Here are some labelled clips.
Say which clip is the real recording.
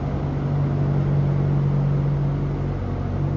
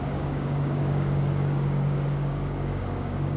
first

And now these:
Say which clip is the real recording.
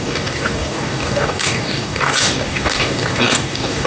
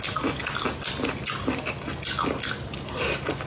second